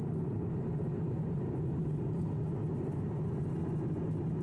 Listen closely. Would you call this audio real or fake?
real